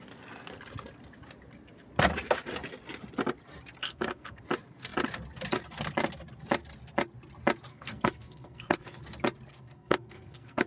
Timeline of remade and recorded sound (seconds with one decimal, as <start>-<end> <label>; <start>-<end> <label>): 0.0-3.8 recorded; 3.8-4.4 remade; 4.4-7.7 recorded; 7.7-9.0 remade; 9.0-9.5 recorded; 9.5-10.7 remade